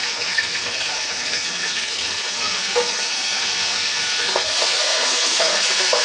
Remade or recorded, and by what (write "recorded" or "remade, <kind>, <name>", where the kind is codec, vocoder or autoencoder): remade, codec, SNAC